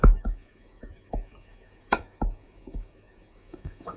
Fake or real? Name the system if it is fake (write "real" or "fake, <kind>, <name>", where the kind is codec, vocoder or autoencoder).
fake, autoencoder, DAC-VAE